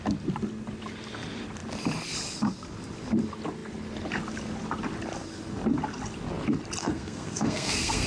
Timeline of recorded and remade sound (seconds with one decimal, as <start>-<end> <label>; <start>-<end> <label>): 0.0-6.8 recorded; 6.8-8.1 remade